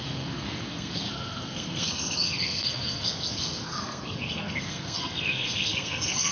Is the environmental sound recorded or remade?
remade